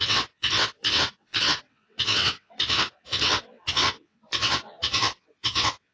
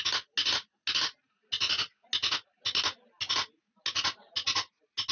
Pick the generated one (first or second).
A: first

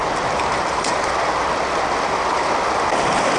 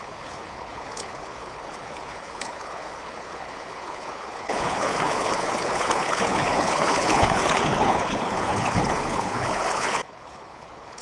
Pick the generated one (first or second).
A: second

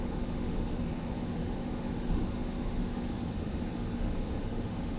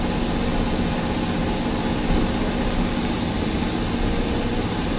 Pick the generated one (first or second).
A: first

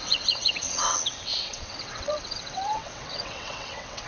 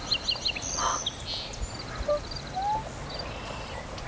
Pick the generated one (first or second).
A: first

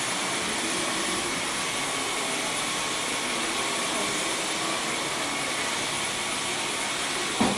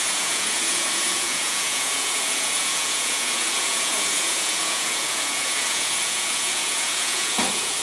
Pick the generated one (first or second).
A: second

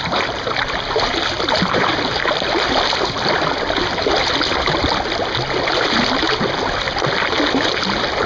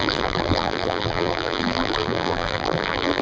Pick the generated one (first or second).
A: second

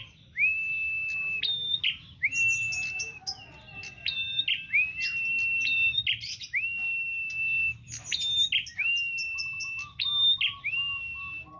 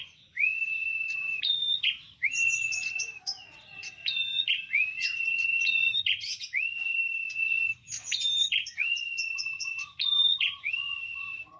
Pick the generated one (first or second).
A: second